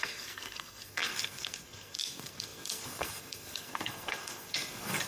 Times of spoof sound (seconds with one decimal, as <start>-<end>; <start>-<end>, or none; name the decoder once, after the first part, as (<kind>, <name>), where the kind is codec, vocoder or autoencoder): 0.0-5.1 (codec, SNAC)